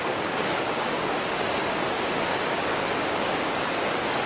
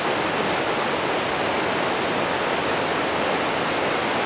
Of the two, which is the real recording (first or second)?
second